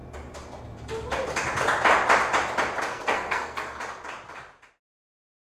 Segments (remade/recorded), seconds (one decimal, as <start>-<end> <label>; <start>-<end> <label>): 0.0-2.9 recorded; 2.9-3.8 remade; 3.8-5.5 recorded